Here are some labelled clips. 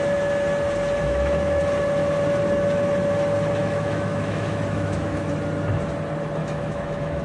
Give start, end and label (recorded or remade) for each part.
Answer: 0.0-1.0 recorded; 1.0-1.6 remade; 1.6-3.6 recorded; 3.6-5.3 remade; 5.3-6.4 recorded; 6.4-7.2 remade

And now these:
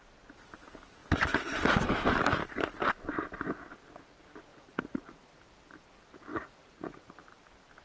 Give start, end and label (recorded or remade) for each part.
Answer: 0.0-4.5 recorded; 4.5-5.4 remade; 5.4-6.3 recorded; 6.3-7.1 remade; 7.1-7.8 recorded

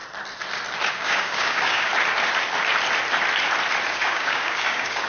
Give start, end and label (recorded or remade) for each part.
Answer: 0.0-0.9 recorded; 0.9-1.9 remade; 1.9-3.9 recorded; 3.9-5.1 remade